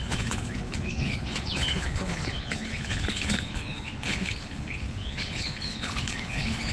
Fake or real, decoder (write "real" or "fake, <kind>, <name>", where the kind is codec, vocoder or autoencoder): fake, codec, HILCodec